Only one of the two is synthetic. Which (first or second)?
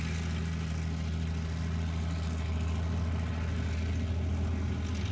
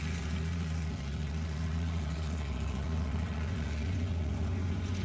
second